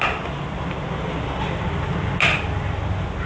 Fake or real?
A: real